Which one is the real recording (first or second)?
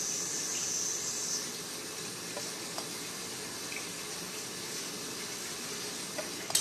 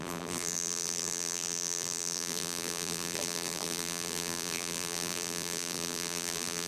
first